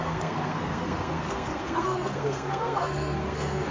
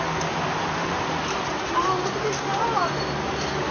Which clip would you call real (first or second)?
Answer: second